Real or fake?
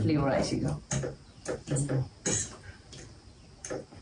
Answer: real